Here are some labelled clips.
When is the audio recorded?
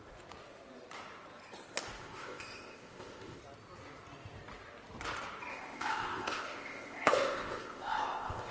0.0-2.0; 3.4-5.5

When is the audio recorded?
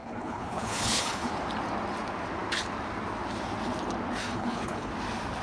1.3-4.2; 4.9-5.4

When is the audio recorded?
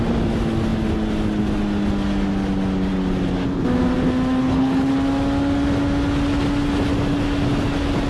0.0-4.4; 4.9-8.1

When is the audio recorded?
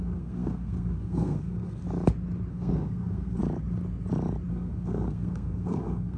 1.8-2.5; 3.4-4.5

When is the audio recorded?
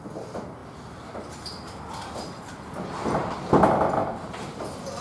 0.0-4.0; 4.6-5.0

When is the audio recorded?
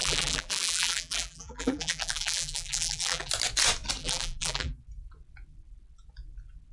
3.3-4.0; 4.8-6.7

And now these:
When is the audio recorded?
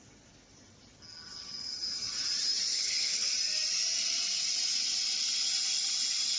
0.0-2.7; 3.3-6.4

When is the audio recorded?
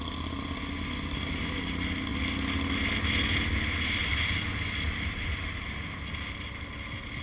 0.0-7.2